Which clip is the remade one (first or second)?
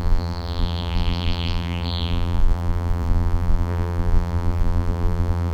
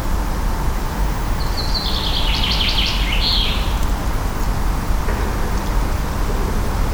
first